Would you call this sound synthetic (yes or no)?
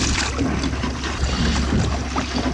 no